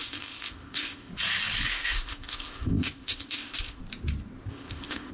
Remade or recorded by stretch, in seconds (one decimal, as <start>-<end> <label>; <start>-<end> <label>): 0.0-1.1 remade; 1.1-1.7 recorded; 1.7-3.8 remade; 3.8-4.5 recorded; 4.5-5.1 remade